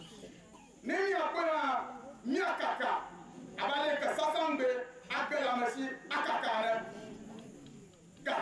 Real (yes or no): yes